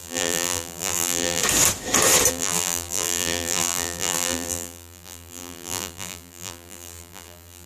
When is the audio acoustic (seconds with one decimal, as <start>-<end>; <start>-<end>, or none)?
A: 1.4-2.3